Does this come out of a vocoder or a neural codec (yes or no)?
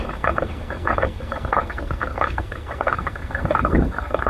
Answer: yes